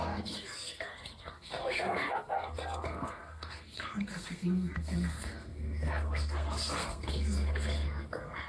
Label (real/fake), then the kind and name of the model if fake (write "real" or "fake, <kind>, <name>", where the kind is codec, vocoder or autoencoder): fake, codec, SNAC